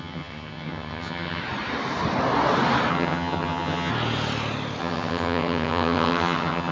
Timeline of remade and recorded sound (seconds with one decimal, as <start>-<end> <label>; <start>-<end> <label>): 0.0-1.4 remade; 1.4-2.9 recorded; 2.9-3.9 remade; 3.9-4.8 recorded; 4.8-6.7 remade